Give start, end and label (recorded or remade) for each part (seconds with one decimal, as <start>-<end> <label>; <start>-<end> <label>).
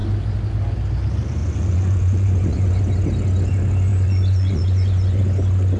0.0-1.4 recorded; 1.4-2.8 remade; 2.8-3.9 recorded; 3.9-5.2 remade; 5.2-5.8 recorded